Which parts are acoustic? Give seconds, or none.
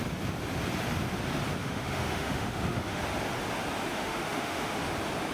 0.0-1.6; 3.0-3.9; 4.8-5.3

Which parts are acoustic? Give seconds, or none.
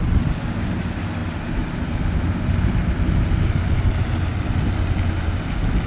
0.0-5.9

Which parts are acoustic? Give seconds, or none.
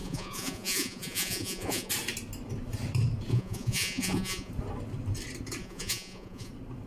1.9-3.3; 4.5-5.6; 6.5-6.9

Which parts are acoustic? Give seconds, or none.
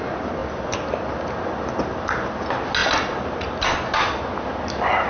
0.0-5.1